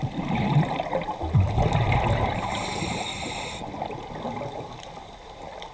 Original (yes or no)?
no